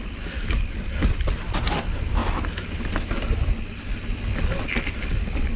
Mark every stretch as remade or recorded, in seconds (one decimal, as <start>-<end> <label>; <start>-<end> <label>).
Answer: 0.0-5.6 recorded